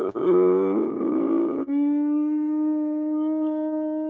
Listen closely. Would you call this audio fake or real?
fake